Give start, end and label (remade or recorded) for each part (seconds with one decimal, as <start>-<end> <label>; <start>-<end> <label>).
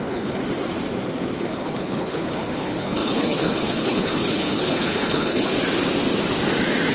0.0-0.4 remade; 0.4-1.4 recorded; 1.4-5.5 remade; 5.5-6.9 recorded